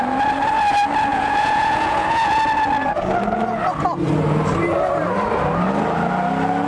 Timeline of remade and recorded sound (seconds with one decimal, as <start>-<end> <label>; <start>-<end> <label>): 0.0-1.1 recorded; 1.1-2.4 remade; 2.4-6.7 recorded